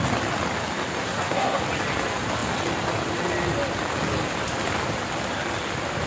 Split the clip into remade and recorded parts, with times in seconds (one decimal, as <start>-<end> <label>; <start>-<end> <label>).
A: 0.0-1.0 recorded; 1.0-1.6 remade; 1.6-6.1 recorded